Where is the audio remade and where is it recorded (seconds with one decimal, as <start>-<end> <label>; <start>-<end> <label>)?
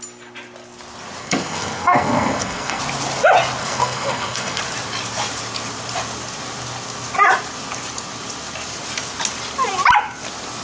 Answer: 0.0-1.2 recorded; 1.2-2.8 remade; 2.8-3.6 recorded; 3.6-4.6 remade; 4.6-10.6 recorded